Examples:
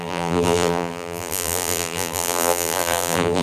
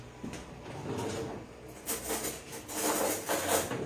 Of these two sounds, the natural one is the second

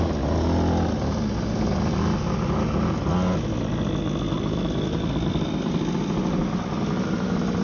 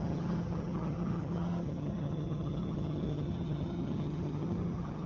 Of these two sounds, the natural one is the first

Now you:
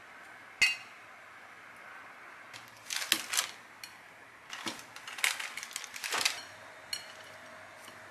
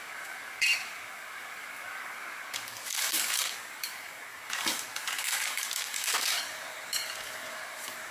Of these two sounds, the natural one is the first